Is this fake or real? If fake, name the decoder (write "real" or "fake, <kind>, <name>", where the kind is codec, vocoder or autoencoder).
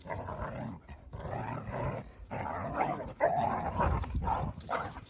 fake, vocoder, BigVGAN v2